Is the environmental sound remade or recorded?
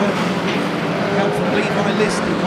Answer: recorded